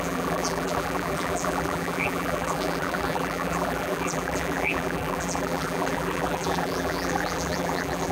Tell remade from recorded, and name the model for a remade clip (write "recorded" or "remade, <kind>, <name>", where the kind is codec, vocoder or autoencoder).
remade, vocoder, BigVGAN v2